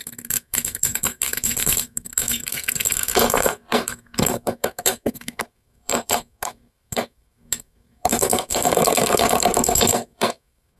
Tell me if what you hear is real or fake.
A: fake